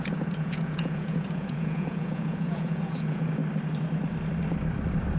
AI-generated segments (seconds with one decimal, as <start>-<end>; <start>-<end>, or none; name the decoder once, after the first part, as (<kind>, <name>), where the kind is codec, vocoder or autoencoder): 0.0-3.4 (vocoder, Vocos)